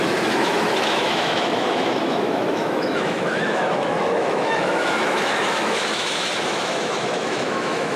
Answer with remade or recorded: remade